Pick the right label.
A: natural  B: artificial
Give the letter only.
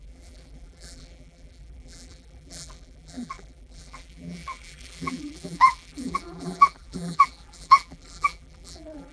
B